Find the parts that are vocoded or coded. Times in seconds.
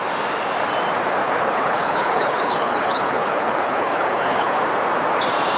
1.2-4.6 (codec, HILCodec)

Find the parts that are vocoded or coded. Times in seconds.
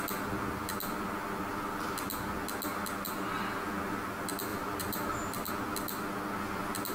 4.5-5.5 (vocoder, BigVGAN v2)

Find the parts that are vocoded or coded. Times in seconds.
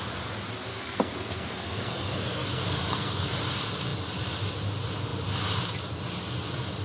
0.7-3.3 (codec, SNAC)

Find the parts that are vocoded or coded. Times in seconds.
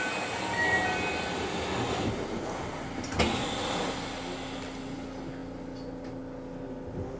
none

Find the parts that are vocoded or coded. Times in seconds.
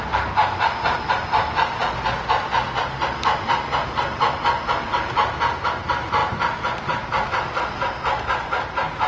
none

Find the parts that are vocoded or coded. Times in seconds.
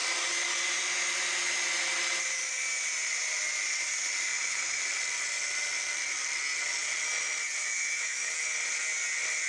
4.3-4.8 (autoencoder, DAC-VAE); 7.6-8.3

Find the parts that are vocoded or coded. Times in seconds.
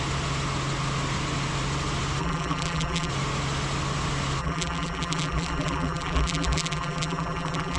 2.2-3.1 (vocoder, BigVGAN v2); 4.4-7.8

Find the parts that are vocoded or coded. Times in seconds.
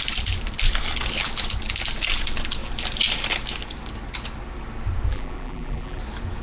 5.1-6.0 (vocoder, BigVGAN v2)